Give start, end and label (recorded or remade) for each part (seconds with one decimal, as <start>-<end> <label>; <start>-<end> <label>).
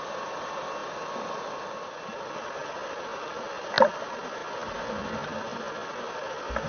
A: 0.0-0.8 recorded; 0.8-1.7 remade; 1.7-6.7 recorded